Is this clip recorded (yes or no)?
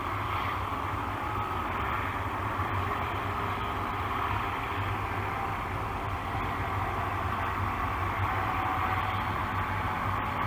yes